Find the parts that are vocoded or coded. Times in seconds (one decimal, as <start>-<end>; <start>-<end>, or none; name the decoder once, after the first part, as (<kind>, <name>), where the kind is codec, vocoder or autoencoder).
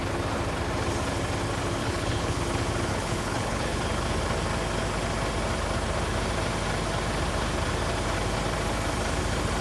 1.8-2.4 (codec, HILCodec); 2.9-3.8